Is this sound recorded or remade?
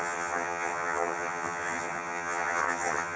remade